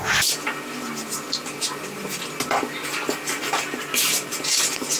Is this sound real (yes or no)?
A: yes